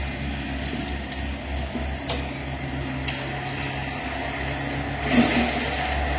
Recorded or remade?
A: recorded